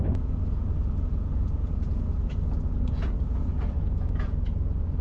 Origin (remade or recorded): remade